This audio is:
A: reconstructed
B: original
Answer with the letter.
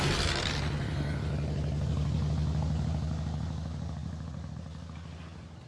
B